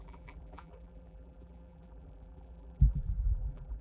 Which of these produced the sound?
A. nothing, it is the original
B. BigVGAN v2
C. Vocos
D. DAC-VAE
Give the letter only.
B